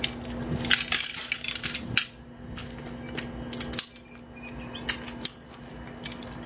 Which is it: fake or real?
real